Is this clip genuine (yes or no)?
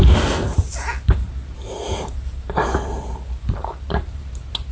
yes